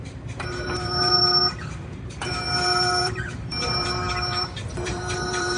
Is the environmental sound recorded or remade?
remade